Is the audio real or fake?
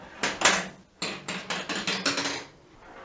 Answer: real